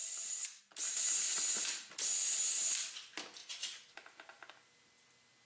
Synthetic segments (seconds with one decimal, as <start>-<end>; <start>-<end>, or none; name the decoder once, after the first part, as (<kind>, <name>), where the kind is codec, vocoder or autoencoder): 0.0-0.6 (vocoder, BigVGAN v2); 3.4-4.5